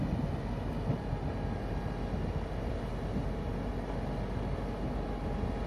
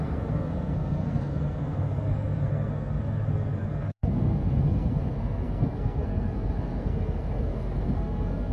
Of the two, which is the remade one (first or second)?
second